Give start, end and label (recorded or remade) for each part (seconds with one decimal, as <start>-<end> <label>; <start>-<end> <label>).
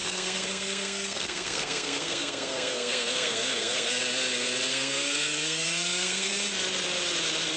0.0-4.0 remade; 4.0-4.7 recorded; 4.7-6.3 remade; 6.3-7.6 recorded